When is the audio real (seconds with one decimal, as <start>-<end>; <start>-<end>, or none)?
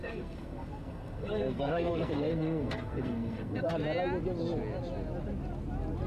3.7-6.1